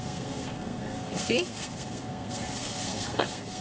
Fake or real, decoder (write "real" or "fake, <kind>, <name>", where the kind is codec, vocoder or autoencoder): fake, codec, SNAC